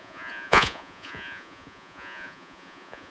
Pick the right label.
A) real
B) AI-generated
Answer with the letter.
B